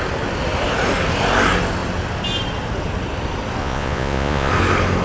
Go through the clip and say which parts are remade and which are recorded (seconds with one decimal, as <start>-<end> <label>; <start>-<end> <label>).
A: 0.0-3.6 recorded; 3.6-4.5 remade; 4.5-5.0 recorded